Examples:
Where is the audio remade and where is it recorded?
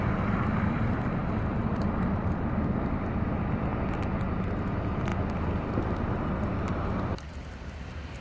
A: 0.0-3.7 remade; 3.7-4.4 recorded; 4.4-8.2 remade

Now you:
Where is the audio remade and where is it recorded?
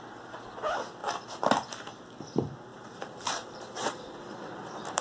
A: 0.0-1.0 recorded; 1.0-2.0 remade; 2.0-2.7 recorded; 2.7-5.0 remade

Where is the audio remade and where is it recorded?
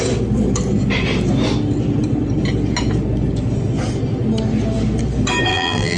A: 0.0-5.5 recorded; 5.5-6.0 remade